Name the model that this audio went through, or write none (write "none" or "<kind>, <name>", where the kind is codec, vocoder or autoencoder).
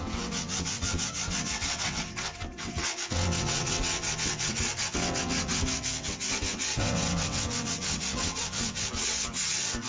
vocoder, WaveNeXt